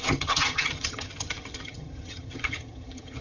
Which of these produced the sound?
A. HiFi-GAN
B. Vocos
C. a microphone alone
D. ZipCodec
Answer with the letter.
A